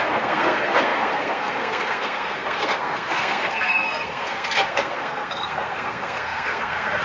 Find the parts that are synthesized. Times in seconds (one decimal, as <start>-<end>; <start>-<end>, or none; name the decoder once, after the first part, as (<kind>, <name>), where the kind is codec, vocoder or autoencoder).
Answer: 0.0-7.0 (codec, SNAC)